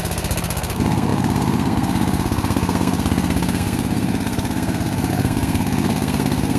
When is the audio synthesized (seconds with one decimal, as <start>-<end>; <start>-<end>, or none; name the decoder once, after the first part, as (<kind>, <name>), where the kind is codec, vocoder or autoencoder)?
0.0-6.6 (codec, SNAC)